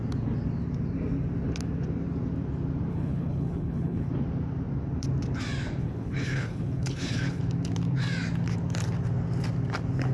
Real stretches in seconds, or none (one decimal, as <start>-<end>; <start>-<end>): 0.0-2.9; 4.1-5.8; 7.4-10.1